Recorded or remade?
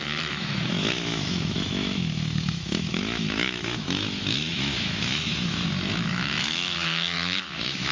remade